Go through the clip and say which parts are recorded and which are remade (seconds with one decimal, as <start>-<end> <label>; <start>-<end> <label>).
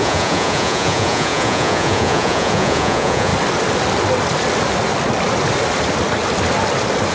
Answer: 0.0-3.3 remade; 3.3-7.1 recorded